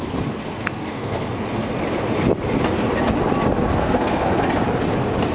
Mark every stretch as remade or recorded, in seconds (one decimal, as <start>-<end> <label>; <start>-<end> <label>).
0.0-0.5 recorded; 0.5-1.3 remade; 1.3-3.7 recorded; 3.7-4.4 remade; 4.4-5.3 recorded